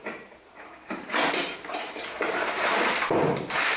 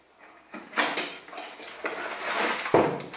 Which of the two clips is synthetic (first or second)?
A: first